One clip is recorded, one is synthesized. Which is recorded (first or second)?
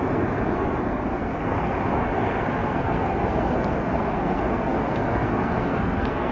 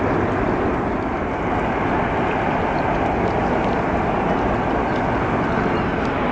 second